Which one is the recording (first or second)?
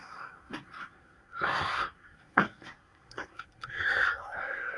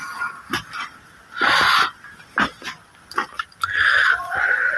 second